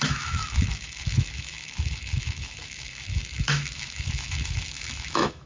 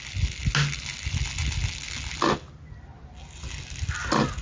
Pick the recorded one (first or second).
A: second